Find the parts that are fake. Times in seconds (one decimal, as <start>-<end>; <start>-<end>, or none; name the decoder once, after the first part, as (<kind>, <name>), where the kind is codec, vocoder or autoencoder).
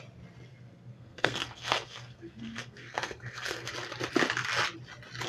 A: 0.5-3.7 (codec, SNAC)